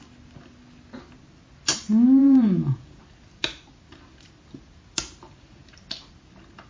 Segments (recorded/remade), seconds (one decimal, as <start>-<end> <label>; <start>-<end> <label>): 0.0-2.2 recorded; 2.2-3.0 remade; 3.0-6.7 recorded